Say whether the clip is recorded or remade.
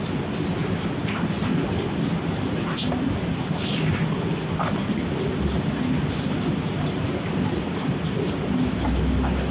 recorded